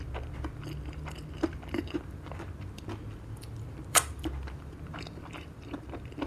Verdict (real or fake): fake